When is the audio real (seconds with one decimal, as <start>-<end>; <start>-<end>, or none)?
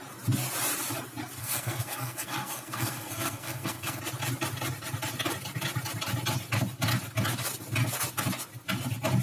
0.0-1.4; 4.0-9.2